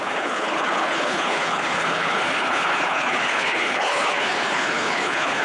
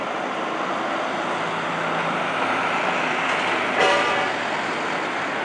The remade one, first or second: first